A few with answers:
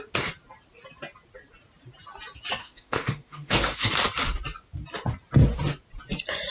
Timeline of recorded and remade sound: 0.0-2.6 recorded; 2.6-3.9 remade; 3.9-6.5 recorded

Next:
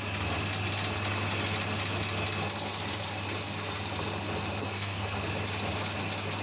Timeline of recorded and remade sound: 0.0-4.6 recorded; 4.6-5.3 remade; 5.3-6.4 recorded

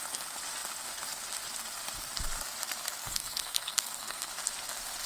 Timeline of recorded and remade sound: 0.0-3.0 recorded; 3.0-4.3 remade; 4.3-5.1 recorded

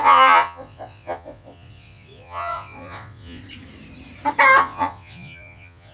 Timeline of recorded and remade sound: 0.0-3.4 remade; 3.4-4.6 recorded; 4.6-5.9 remade

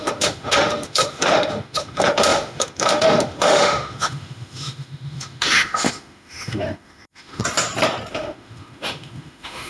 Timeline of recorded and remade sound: 0.0-7.4 remade; 7.4-8.1 recorded; 8.1-9.7 remade

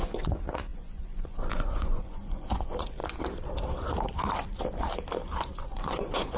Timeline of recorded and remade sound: 0.0-3.0 remade; 3.0-5.6 recorded; 5.6-6.4 remade

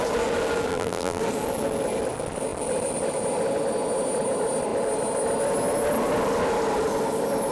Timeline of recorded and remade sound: 0.0-0.7 recorded; 0.7-1.2 remade; 1.2-7.5 recorded